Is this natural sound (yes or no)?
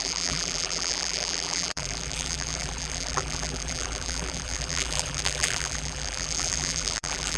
no